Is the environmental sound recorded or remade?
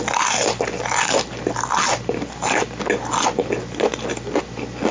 recorded